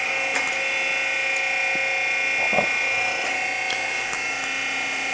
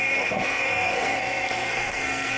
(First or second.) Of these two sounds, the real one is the first